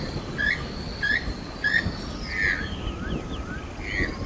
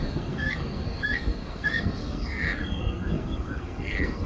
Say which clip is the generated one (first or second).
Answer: second